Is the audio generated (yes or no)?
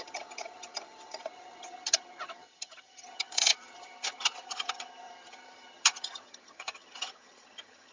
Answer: yes